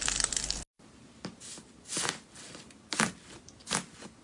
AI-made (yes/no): no